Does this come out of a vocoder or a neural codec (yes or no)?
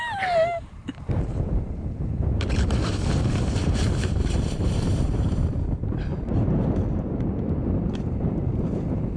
yes